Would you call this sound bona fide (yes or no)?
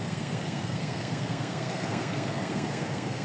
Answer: no